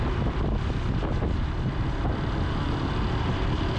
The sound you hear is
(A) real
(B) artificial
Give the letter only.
A